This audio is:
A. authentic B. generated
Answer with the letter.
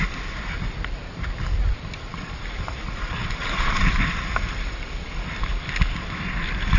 B